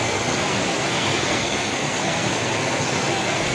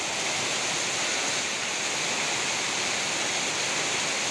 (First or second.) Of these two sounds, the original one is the second